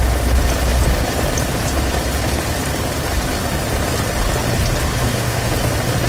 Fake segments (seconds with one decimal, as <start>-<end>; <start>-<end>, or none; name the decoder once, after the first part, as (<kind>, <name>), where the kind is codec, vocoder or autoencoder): 5.0-5.5 (autoencoder, DAC-VAE)